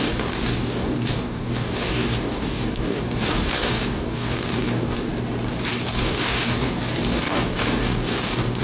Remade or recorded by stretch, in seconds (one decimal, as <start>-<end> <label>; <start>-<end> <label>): 0.0-5.1 remade; 5.1-5.7 recorded; 5.7-8.6 remade